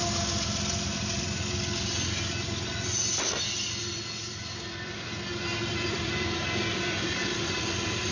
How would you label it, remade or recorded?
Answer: recorded